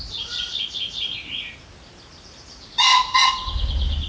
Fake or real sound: real